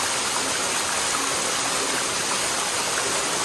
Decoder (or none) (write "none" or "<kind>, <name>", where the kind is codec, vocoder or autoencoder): none